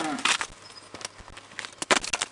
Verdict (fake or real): real